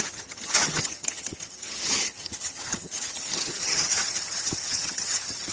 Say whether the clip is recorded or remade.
remade